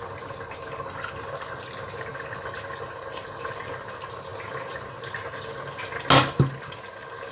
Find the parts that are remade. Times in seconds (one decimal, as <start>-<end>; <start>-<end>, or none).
none